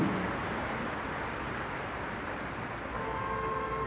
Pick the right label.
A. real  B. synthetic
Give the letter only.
A